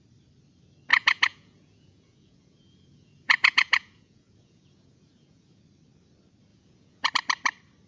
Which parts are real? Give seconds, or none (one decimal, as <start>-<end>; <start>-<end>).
0.0-0.9; 5.6-6.5; 7.1-7.9